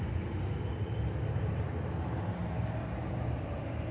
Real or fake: real